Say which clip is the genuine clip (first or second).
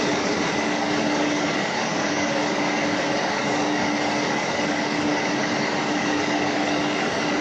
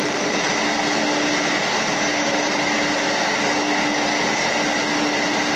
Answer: second